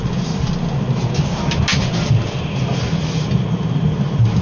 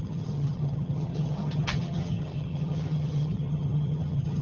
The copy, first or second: second